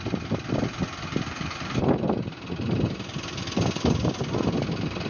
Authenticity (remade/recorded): recorded